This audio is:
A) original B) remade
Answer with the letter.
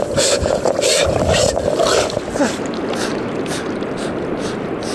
A